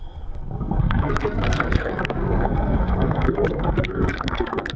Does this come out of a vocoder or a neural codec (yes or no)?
yes